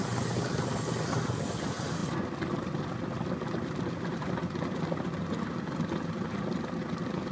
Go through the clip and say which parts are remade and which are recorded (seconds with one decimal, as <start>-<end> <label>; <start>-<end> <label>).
0.0-7.3 recorded